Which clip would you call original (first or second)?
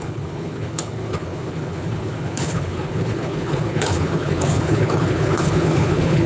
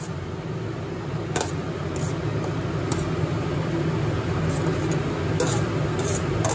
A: second